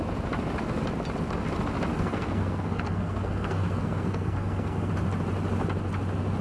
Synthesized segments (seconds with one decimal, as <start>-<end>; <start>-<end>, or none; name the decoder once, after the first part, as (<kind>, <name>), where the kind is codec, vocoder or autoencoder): 1.9-4.9 (codec, SNAC)